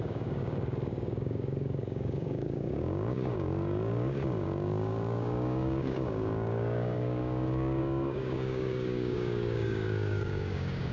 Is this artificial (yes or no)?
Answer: yes